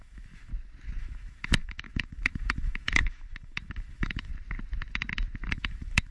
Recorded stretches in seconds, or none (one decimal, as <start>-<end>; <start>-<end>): 0.5-1.0; 4.3-5.5